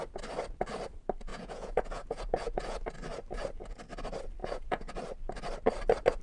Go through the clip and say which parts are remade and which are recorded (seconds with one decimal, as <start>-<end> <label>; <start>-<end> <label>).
0.0-1.3 recorded; 1.3-2.8 remade; 2.8-4.4 recorded; 4.4-4.9 remade; 4.9-6.2 recorded